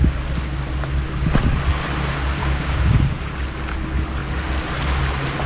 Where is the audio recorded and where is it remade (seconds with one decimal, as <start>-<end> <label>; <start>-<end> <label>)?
0.0-2.4 recorded; 2.4-3.2 remade; 3.2-5.5 recorded